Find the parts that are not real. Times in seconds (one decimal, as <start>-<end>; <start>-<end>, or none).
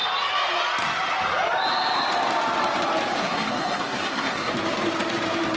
3.2-4.5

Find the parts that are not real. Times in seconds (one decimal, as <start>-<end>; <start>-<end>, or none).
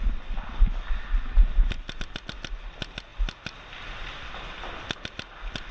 none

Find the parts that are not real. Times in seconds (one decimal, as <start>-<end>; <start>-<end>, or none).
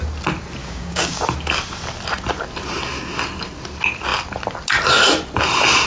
0.6-1.2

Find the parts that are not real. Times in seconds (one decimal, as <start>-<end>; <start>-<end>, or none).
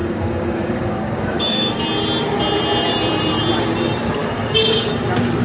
0.0-1.8; 4.2-4.9